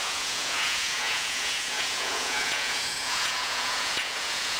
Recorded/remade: remade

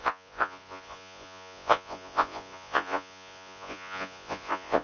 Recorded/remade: remade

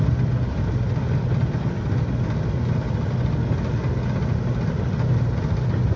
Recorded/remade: recorded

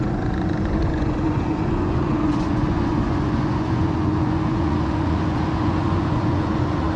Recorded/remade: remade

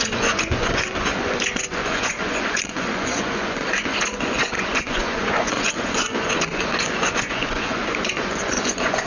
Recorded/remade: remade